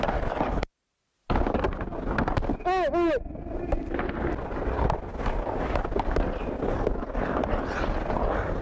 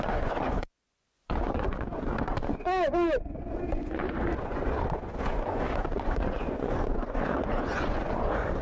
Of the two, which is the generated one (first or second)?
second